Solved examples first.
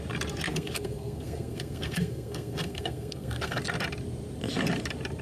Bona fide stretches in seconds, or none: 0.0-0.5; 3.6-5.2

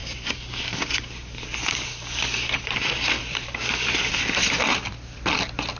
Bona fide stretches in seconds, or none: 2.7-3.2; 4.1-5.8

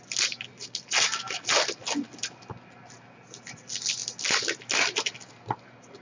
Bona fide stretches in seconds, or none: 0.0-6.0

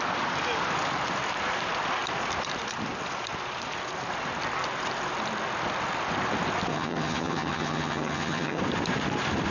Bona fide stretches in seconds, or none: 0.0-6.7; 8.6-9.5

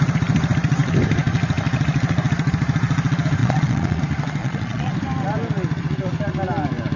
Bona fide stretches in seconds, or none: 0.0-3.4; 4.0-4.4; 4.9-7.0

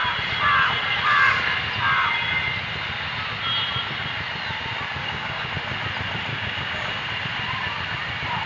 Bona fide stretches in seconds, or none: 0.0-5.0; 5.5-6.3; 7.0-8.5

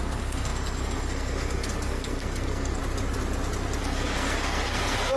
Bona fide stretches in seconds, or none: 2.8-3.8

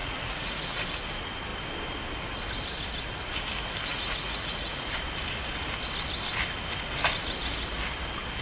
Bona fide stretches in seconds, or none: 0.8-3.9; 4.9-8.4